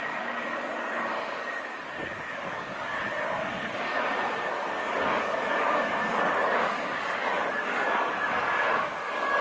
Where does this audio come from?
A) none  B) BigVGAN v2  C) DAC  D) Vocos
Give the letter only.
C